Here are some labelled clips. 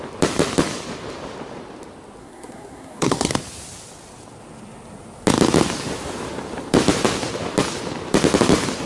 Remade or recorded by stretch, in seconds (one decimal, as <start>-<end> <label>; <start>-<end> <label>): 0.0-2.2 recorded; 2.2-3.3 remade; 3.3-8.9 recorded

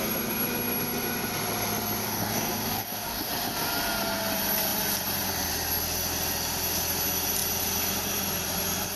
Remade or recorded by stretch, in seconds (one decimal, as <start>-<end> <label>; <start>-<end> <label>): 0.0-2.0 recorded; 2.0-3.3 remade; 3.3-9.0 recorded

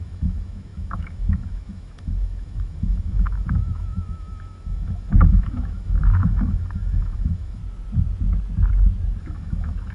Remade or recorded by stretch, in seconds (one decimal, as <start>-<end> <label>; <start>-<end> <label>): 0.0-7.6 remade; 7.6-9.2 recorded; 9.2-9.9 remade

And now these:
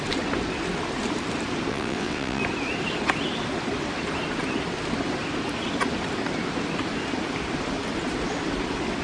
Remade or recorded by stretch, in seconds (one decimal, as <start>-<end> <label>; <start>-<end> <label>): 0.0-1.7 recorded; 1.7-2.4 remade; 2.4-9.0 recorded

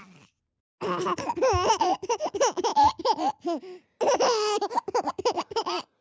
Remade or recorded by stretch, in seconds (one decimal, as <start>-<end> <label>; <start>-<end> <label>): 0.0-6.0 recorded

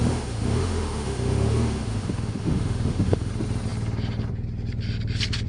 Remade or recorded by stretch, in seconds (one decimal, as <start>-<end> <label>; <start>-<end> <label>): 0.0-3.3 remade; 3.3-5.5 recorded